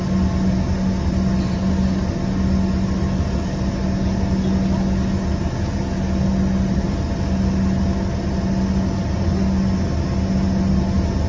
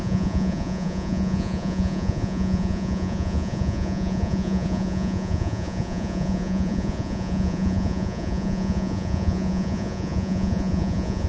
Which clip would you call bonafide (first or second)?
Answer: first